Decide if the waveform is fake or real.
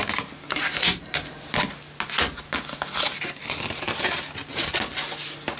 real